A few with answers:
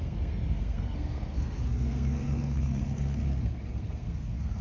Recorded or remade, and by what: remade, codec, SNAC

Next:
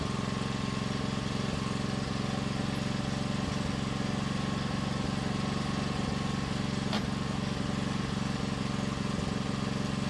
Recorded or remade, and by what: recorded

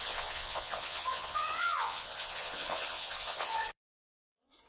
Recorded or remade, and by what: remade, vocoder, Vocos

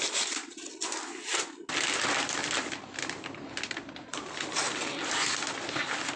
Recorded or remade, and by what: recorded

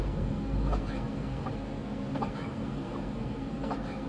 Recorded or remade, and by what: remade, codec, SNAC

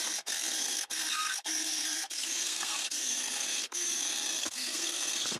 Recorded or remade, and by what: remade, codec, SNAC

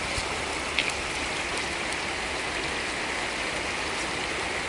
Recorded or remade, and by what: recorded